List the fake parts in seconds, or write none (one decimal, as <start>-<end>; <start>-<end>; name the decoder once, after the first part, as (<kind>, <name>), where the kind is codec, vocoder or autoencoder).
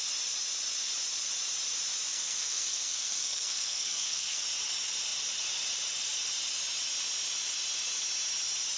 2.1-4.4 (codec, SNAC)